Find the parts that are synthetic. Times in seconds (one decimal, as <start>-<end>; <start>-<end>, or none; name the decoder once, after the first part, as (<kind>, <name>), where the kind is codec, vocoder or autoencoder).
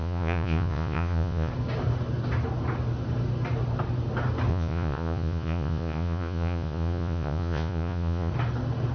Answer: 0.0-1.5 (vocoder, Vocos); 4.5-8.3